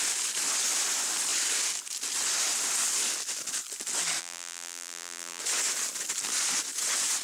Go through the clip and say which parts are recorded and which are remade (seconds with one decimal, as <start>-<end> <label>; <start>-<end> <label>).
0.0-4.2 recorded; 4.2-5.4 remade; 5.4-7.2 recorded